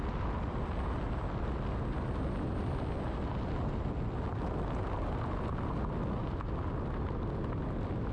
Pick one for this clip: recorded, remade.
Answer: recorded